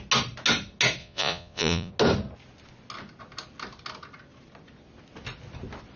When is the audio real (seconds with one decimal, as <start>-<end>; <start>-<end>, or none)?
0.0-1.0; 1.9-6.0